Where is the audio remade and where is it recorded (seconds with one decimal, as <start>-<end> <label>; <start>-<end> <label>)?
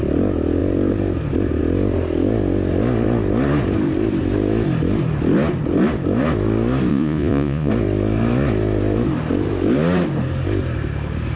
0.0-6.9 recorded; 6.9-7.7 remade; 7.7-11.4 recorded